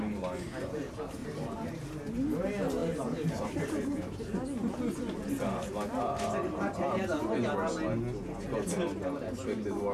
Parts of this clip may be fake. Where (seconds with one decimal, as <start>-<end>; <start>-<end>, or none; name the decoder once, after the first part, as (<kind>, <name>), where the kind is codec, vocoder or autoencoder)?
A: 1.2-1.7 (vocoder, BigVGAN v2); 2.8-4.2